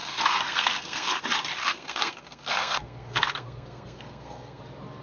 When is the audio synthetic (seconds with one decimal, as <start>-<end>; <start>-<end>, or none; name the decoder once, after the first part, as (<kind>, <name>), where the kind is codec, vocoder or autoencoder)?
0.0-1.2 (codec, SNAC); 1.6-4.6